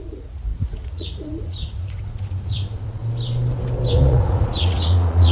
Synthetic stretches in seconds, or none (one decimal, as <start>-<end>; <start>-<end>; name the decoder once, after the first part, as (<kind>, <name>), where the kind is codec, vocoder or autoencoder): 0.0-3.0 (vocoder, Vocos); 3.9-5.3